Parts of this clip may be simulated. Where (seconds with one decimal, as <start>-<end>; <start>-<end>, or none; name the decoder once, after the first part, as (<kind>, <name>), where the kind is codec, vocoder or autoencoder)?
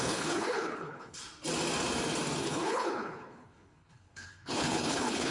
0.0-1.2 (codec, HILCodec); 2.4-5.3